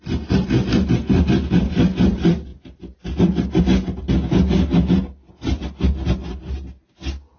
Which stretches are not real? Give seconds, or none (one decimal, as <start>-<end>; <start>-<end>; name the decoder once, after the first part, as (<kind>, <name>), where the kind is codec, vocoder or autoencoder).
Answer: none